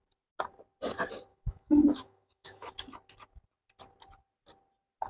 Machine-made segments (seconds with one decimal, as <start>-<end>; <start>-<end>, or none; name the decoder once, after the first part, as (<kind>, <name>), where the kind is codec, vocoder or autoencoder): 1.3-2.7 (autoencoder, DAC-VAE)